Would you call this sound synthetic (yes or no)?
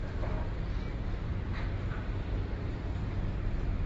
no